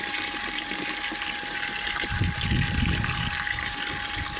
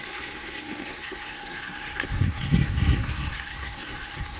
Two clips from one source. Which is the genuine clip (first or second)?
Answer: first